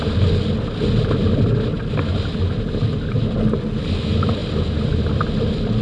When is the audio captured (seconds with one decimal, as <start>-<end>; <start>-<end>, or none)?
0.0-5.8